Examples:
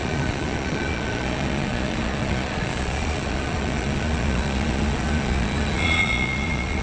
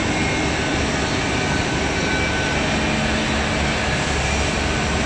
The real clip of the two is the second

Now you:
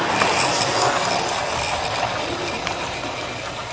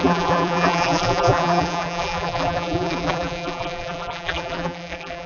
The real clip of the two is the first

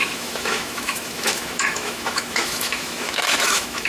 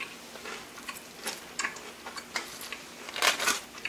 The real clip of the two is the second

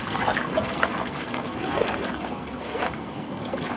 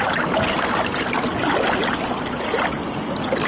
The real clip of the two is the second